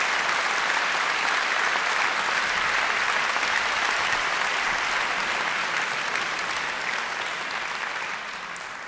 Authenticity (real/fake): real